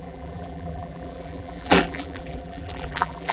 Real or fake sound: fake